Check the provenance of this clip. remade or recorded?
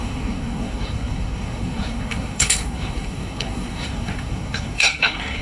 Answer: remade